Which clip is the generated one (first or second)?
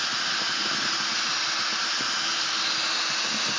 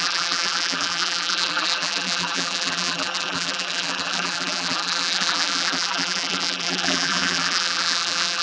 second